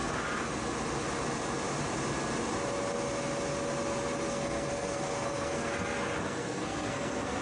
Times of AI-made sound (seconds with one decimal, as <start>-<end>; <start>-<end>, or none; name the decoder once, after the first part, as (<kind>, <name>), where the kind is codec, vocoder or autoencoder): 4.3-5.7 (codec, SNAC); 6.2-7.4